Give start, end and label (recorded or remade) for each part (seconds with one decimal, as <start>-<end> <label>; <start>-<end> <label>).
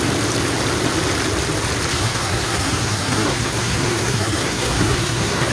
0.0-1.9 recorded; 1.9-5.5 remade